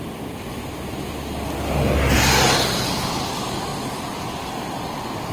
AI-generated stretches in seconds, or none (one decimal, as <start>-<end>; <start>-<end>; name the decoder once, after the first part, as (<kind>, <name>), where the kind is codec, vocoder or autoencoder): none